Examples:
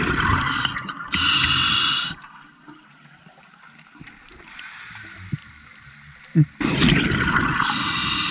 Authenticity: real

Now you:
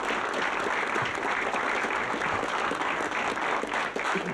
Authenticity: real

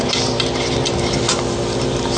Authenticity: real